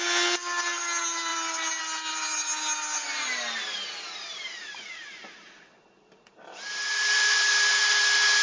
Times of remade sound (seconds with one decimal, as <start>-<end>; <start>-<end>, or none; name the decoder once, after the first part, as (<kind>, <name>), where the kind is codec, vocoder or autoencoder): 1.3-1.8 (vocoder, BigVGAN v2); 4.2-7.8